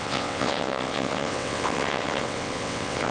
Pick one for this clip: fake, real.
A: fake